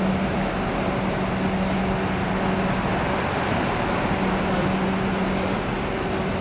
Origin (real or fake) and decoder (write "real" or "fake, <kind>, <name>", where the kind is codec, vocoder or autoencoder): real